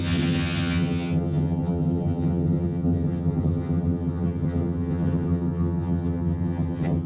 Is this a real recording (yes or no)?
no